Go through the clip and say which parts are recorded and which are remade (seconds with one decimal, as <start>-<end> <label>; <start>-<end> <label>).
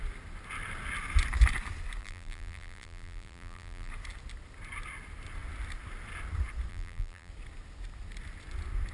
0.0-2.0 recorded; 2.0-3.9 remade; 3.9-6.7 recorded; 6.7-7.3 remade; 7.3-8.9 recorded